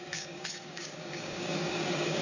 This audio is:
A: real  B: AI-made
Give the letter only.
B